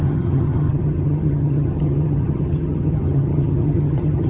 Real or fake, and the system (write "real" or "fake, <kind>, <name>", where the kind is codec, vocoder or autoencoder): fake, vocoder, HiFi-GAN